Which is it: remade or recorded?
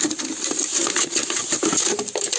remade